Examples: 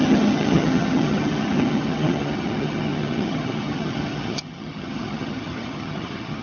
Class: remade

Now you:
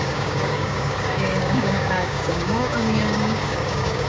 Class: remade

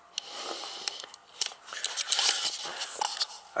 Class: recorded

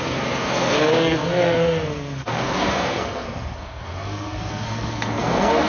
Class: remade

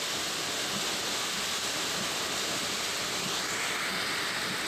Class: recorded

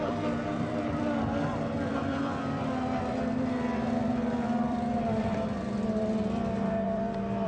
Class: remade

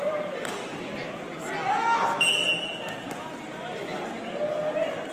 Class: recorded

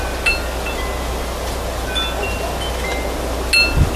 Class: recorded